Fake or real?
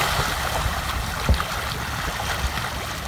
real